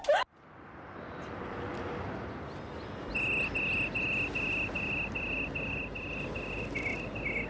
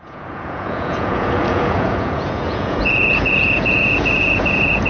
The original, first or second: first